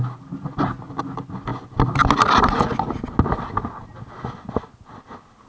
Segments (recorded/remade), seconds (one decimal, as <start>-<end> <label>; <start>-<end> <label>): 0.0-5.5 recorded